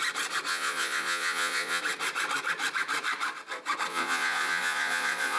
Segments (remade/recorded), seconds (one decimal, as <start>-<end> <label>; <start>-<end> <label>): 0.0-0.5 recorded; 0.5-1.8 remade; 1.8-3.9 recorded; 3.9-5.4 remade